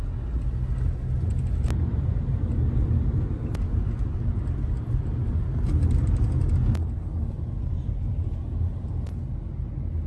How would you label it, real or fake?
real